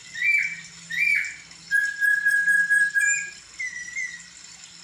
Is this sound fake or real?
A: real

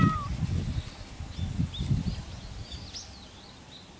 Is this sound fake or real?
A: real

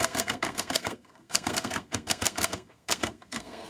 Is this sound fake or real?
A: fake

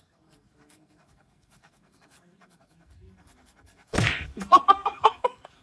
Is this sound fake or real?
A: fake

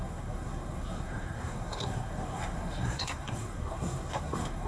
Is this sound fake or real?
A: fake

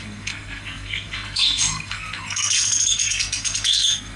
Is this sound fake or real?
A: fake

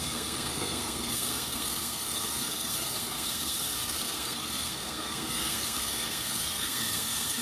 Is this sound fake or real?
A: fake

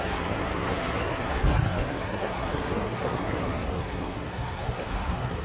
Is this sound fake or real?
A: fake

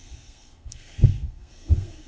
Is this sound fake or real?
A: fake